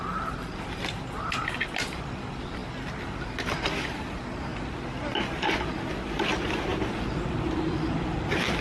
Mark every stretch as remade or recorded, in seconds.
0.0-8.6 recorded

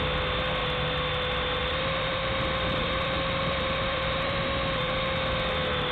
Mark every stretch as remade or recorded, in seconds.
0.0-1.6 recorded; 1.6-4.9 remade; 4.9-5.9 recorded

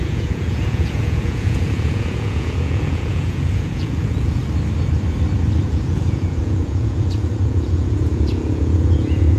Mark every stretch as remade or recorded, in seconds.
0.0-4.4 remade; 4.4-5.6 recorded; 5.6-9.4 remade